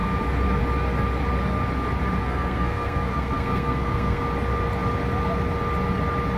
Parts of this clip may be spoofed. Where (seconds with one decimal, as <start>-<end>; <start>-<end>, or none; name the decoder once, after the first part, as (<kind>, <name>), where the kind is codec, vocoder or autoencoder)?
2.2-4.2 (codec, SNAC)